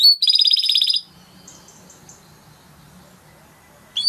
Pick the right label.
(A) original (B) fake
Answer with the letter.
A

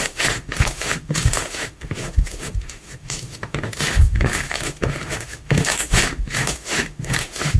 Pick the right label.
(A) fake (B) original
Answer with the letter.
A